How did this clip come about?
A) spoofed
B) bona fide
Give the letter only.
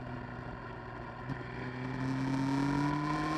B